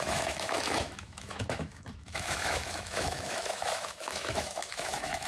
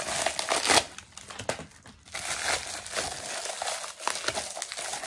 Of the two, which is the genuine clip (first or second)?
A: second